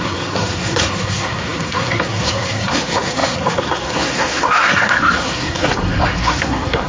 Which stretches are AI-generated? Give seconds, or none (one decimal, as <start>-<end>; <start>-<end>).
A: 0.0-6.9